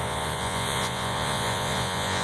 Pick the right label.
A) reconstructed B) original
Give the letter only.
A